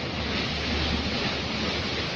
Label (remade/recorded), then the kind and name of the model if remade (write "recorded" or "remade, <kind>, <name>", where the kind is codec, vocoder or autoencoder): recorded